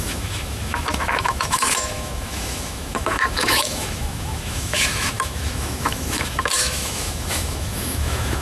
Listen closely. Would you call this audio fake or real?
fake